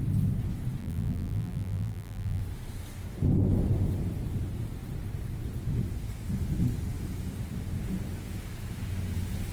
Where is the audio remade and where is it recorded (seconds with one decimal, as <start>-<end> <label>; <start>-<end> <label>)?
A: 0.0-0.8 recorded; 0.8-2.4 remade; 2.4-9.5 recorded

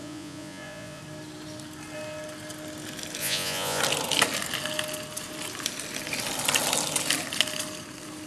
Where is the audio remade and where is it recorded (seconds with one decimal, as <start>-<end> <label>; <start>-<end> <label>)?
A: 0.0-1.0 remade; 1.0-3.2 recorded; 3.2-3.8 remade; 3.8-8.3 recorded

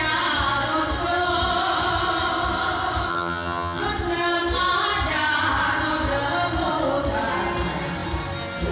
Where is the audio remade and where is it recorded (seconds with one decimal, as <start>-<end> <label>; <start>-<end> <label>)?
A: 0.0-3.1 recorded; 3.1-3.8 remade; 3.8-8.7 recorded

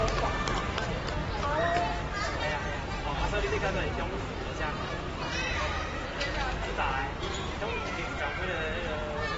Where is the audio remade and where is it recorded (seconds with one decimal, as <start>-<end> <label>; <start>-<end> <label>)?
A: 0.0-1.2 recorded; 1.2-4.3 remade; 4.3-7.0 recorded; 7.0-8.2 remade; 8.2-9.4 recorded

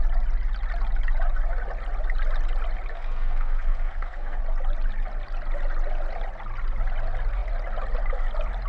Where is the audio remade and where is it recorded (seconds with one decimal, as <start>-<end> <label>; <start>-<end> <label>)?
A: 0.0-2.9 recorded; 2.9-4.4 remade; 4.4-8.7 recorded

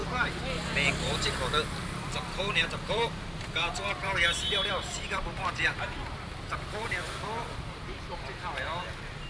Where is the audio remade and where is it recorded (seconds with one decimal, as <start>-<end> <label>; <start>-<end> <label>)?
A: 0.0-1.8 recorded; 1.8-9.3 remade